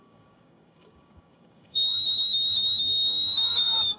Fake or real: fake